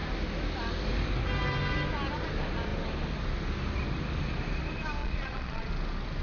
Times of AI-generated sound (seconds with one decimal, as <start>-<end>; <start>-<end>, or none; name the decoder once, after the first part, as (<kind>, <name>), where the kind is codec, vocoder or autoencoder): 5.0-5.7 (vocoder, Vocos)